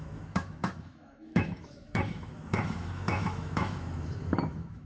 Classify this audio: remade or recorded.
remade